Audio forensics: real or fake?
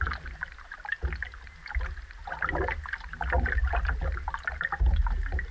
real